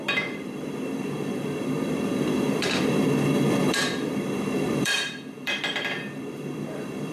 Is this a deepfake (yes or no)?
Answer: yes